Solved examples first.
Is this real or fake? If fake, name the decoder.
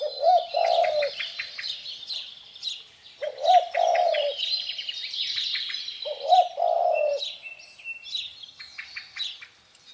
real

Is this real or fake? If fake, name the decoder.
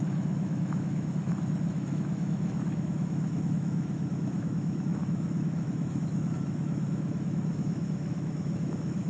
fake, autoencoder, DAC-VAE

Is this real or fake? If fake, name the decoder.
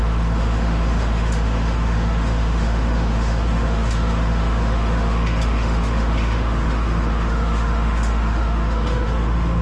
fake, autoencoder, DAC-VAE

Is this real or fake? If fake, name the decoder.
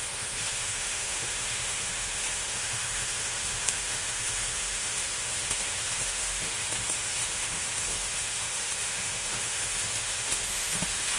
fake, autoencoder, DAC-VAE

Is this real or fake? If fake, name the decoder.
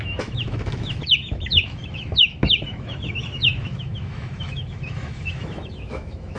fake, autoencoder, DAC-VAE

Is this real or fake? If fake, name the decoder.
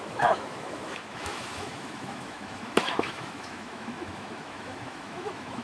fake, autoencoder, DAC-VAE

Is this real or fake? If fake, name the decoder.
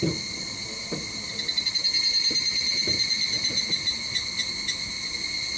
real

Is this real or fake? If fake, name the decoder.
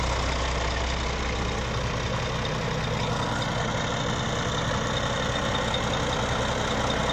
real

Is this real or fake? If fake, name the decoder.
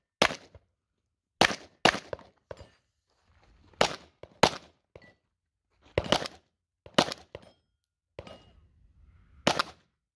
real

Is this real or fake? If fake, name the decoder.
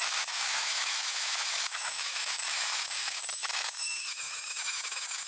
fake, autoencoder, DAC-VAE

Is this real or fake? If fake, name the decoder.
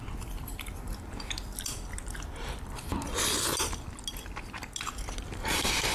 real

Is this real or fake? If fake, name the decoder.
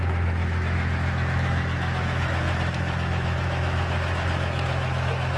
fake, autoencoder, DAC-VAE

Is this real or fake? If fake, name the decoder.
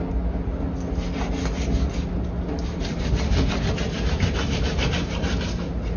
real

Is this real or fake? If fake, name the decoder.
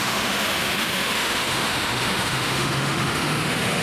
fake, autoencoder, DAC-VAE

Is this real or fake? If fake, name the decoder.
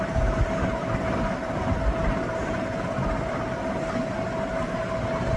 real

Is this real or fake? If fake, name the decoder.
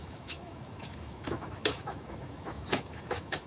fake, autoencoder, DAC-VAE